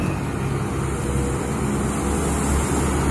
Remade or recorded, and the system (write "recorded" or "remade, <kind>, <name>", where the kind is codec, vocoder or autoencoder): recorded